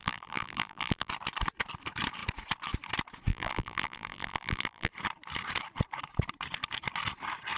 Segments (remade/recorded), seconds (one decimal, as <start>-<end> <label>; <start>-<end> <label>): 0.0-1.1 remade; 1.1-3.3 recorded; 3.3-4.9 remade; 4.9-7.6 recorded